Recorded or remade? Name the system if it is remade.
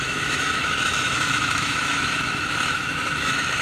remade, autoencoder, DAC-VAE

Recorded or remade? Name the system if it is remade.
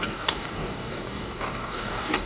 remade, codec, DAC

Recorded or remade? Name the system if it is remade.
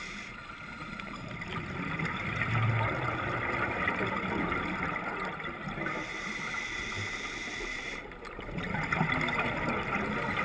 recorded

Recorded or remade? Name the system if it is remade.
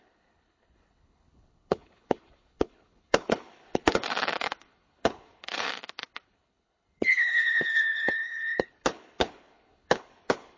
remade, codec, HILCodec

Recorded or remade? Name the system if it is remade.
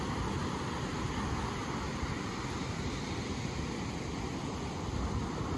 recorded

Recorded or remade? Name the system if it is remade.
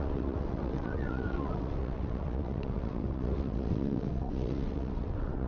remade, vocoder, WaveNeXt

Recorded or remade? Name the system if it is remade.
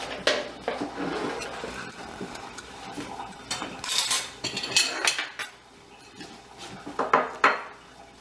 recorded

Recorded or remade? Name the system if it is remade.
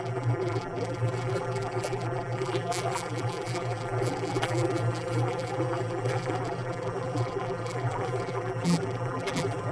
remade, vocoder, BigVGAN v2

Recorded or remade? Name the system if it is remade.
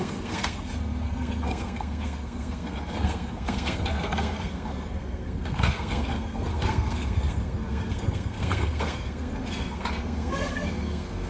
remade, codec, SNAC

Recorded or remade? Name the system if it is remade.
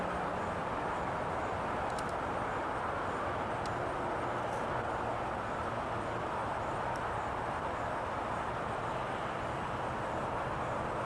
recorded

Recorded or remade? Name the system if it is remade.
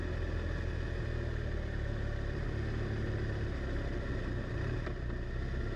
recorded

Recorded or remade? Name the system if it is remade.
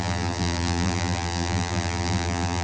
remade, vocoder, BigVGAN v2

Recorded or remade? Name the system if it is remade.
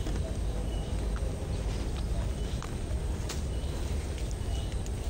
recorded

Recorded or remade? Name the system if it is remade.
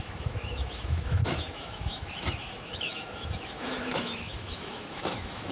remade, autoencoder, DAC-VAE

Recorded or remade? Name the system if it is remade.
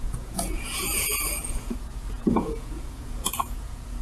remade, vocoder, Vocos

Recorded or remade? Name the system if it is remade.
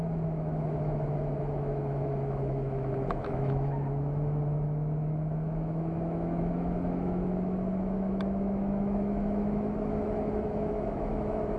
remade, autoencoder, DAC-VAE